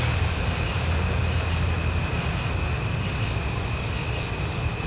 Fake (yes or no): no